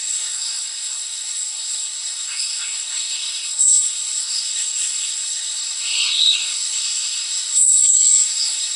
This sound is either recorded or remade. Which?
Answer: remade